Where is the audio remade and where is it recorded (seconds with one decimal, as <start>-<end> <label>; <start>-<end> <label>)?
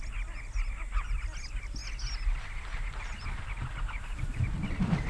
0.0-5.1 recorded